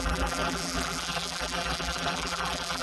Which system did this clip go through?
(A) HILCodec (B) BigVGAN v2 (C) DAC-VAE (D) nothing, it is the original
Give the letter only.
B